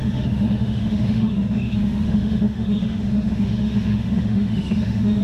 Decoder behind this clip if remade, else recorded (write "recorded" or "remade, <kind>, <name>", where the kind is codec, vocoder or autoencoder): remade, autoencoder, DAC-VAE